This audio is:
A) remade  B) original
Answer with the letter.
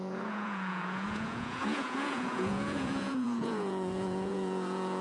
A